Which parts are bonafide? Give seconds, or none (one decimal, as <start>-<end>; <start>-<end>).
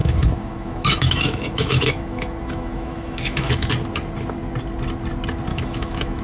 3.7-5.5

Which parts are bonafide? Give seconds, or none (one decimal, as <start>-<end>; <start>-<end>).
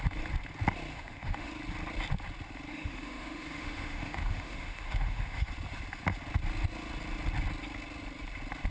0.0-0.9; 1.5-2.7; 5.5-8.7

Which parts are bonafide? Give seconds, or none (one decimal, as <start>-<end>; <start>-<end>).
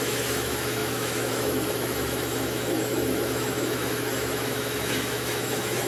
none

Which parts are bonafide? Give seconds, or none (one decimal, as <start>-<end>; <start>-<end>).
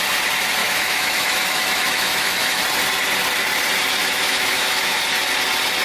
0.0-0.6; 2.6-4.0; 5.0-5.8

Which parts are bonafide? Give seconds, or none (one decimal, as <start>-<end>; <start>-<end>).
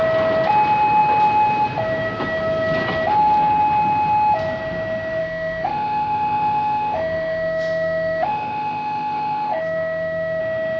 0.0-5.2; 10.4-10.8